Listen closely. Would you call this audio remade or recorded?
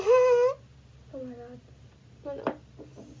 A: recorded